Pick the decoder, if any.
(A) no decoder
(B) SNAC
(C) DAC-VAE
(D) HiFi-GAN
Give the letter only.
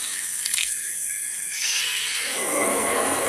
B